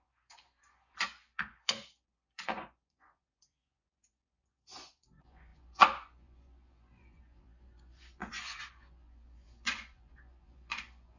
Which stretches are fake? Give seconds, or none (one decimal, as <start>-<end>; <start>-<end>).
0.0-11.2